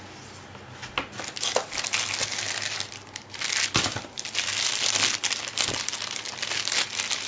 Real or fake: real